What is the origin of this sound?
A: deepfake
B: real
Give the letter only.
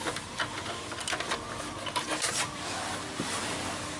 B